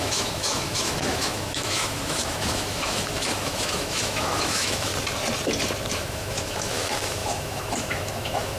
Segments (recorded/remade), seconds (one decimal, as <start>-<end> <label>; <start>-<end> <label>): 0.0-4.9 remade; 4.9-5.9 recorded; 5.9-8.6 remade